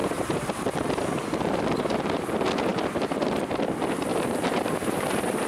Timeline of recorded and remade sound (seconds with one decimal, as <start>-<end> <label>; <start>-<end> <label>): 0.0-0.6 remade; 0.6-2.7 recorded; 2.7-3.4 remade; 3.4-4.1 recorded; 4.1-5.5 remade